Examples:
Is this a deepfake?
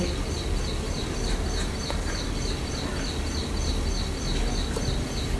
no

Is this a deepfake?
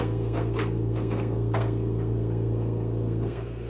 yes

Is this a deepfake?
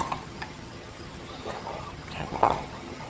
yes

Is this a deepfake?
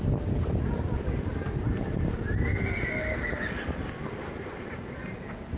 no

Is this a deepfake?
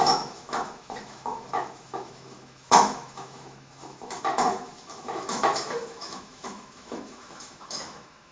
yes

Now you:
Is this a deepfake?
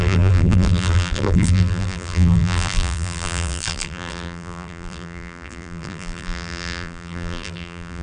yes